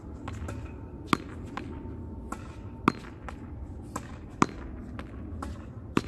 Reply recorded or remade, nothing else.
recorded